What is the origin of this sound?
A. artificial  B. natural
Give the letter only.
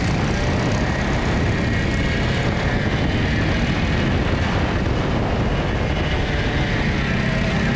B